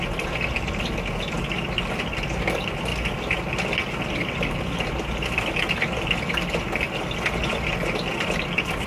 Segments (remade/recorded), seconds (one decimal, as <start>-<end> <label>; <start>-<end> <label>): 0.0-8.9 recorded